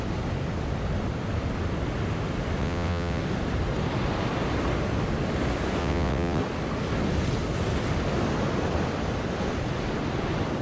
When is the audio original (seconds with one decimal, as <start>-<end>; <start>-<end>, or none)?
0.0-2.6; 3.2-5.8; 6.4-10.6